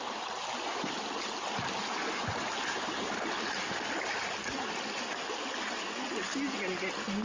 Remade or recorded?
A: recorded